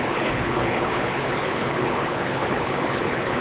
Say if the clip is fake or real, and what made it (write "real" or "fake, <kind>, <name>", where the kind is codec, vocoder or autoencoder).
fake, codec, HILCodec